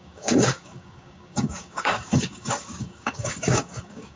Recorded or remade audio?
remade